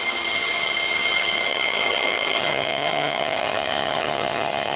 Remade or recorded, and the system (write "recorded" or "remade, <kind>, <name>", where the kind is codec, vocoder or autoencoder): remade, vocoder, HiFi-GAN